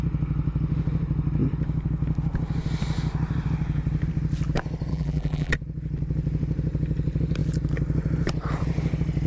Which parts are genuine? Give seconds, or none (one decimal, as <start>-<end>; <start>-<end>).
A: 0.0-4.9; 5.5-9.3